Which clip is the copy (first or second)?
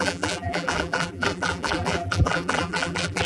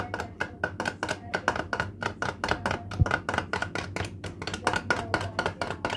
first